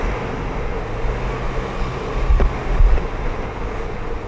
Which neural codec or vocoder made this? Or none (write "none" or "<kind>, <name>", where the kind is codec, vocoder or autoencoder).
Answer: none